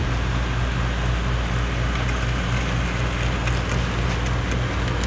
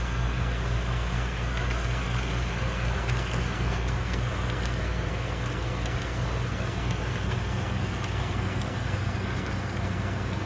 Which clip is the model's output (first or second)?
second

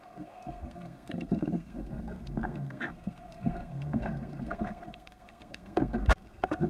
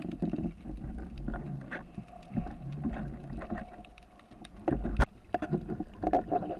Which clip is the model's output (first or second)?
first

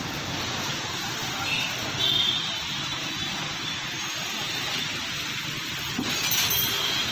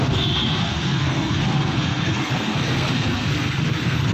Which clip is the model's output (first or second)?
second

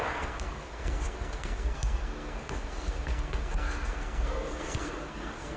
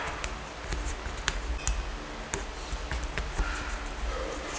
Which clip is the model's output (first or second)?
first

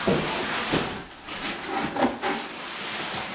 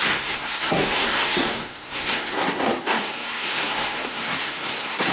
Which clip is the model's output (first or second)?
second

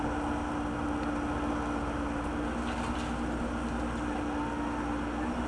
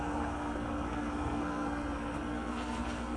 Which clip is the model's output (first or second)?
second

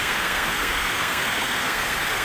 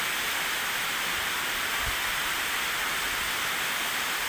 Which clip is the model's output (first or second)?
first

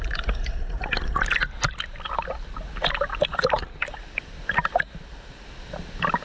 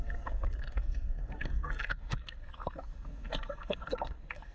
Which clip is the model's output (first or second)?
second